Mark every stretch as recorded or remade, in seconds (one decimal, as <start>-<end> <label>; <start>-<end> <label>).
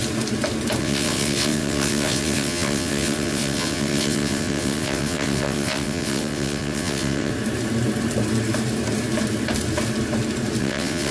0.0-0.8 recorded; 0.8-7.3 remade; 7.3-10.6 recorded; 10.6-11.1 remade